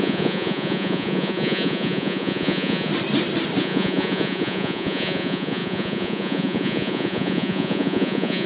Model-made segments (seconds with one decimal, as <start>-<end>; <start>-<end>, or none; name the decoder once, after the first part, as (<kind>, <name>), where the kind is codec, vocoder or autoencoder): 0.0-2.9 (vocoder, Vocos); 3.6-8.5